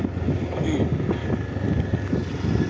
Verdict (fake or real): real